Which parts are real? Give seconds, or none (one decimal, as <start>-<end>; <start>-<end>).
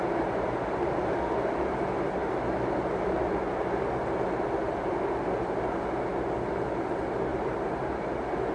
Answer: 0.0-7.3; 8.1-8.5